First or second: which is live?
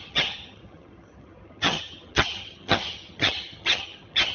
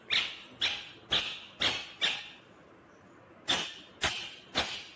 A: second